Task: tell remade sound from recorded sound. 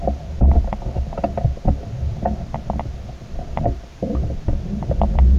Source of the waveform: recorded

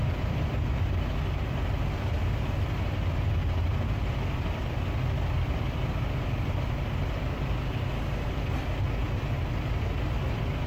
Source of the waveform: recorded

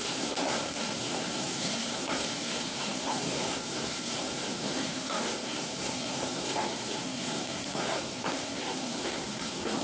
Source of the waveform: remade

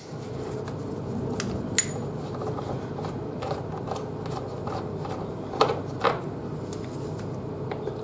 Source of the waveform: recorded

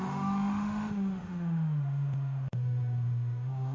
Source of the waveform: remade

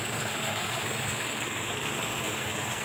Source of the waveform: remade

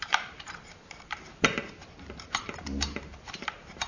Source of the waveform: remade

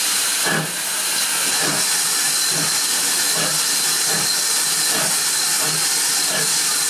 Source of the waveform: recorded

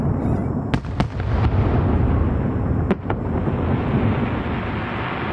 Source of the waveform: recorded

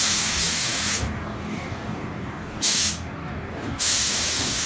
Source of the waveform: remade